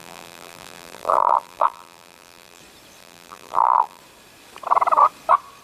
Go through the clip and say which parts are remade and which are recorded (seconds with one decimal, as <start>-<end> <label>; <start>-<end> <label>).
0.0-2.6 remade; 2.6-3.0 recorded; 3.0-4.0 remade; 4.0-5.6 recorded

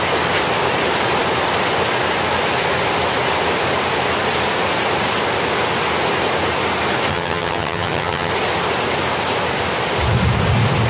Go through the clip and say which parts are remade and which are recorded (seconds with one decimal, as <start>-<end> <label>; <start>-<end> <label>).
0.0-7.1 recorded; 7.1-8.3 remade; 8.3-10.9 recorded

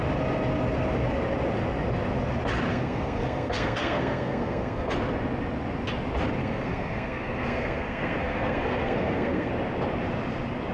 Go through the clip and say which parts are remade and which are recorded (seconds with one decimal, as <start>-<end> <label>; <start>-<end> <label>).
0.0-2.7 recorded; 2.7-4.9 remade; 4.9-6.4 recorded; 6.4-9.5 remade; 9.5-10.7 recorded

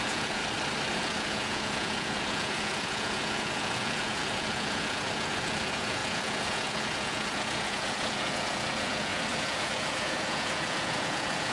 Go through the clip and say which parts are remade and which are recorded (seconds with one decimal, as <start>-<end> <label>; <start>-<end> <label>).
0.0-0.4 remade; 0.4-0.9 recorded; 0.9-11.5 remade

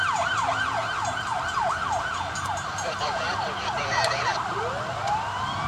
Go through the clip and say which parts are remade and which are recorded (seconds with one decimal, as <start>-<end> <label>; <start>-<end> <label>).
0.0-5.7 recorded

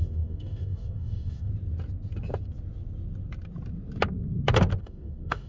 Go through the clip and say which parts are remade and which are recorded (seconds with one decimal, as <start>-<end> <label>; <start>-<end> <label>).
0.0-1.5 remade; 1.5-4.8 recorded; 4.8-5.5 remade

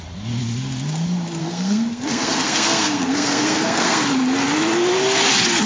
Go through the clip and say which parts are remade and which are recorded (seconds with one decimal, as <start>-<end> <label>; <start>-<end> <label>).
0.0-1.4 recorded; 1.4-4.0 remade; 4.0-5.7 recorded

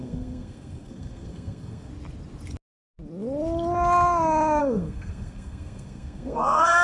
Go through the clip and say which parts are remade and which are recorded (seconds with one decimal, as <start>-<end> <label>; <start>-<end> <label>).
0.0-1.9 remade; 1.9-4.6 recorded; 4.6-6.8 remade